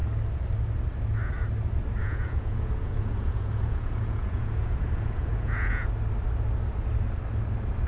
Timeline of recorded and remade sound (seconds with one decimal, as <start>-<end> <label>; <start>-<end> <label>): 0.0-2.0 recorded; 2.0-5.9 remade; 5.9-7.9 recorded